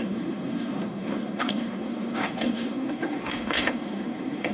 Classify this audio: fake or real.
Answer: fake